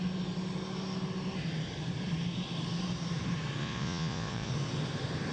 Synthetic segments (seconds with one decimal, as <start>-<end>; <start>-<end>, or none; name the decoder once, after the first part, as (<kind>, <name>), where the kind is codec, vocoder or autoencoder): 3.6-4.5 (vocoder, Vocos)